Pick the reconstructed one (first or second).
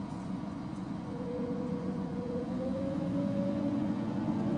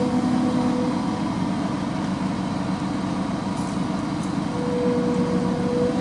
first